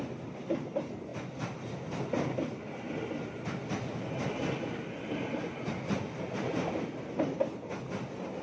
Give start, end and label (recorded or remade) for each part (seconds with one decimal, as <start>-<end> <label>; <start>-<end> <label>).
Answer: 0.0-8.4 recorded